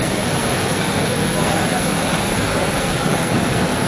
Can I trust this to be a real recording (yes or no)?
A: no